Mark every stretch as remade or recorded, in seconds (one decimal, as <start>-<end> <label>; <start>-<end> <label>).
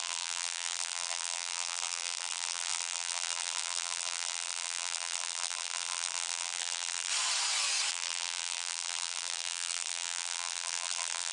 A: 0.0-7.1 remade; 7.1-7.9 recorded; 7.9-11.3 remade